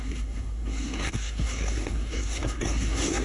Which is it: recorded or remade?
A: remade